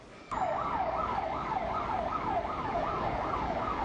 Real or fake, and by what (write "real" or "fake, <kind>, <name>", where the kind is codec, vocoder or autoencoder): fake, codec, DAC